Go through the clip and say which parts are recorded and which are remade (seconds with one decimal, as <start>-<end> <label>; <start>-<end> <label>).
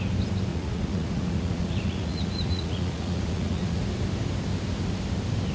0.0-0.5 recorded; 0.5-3.8 remade; 3.8-5.5 recorded